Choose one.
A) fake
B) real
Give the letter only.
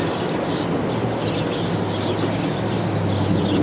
B